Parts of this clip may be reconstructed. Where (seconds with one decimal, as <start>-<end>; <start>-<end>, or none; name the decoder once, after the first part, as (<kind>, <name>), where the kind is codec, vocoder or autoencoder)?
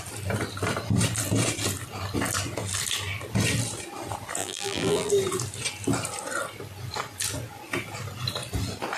4.4-5.1 (vocoder, BigVGAN v2)